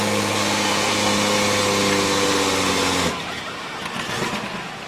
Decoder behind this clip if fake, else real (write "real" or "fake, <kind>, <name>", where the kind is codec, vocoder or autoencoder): real